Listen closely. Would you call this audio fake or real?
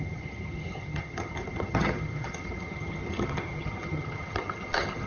fake